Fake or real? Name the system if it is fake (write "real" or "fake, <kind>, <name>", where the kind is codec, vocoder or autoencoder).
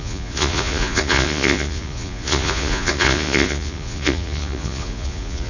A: fake, vocoder, Vocos